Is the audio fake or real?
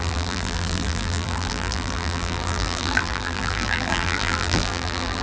fake